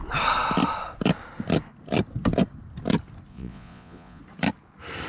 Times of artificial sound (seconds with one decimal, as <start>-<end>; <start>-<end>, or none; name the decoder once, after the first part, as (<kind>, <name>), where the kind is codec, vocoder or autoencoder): 3.3-4.2 (vocoder, Vocos)